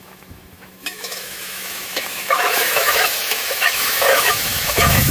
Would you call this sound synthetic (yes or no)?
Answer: yes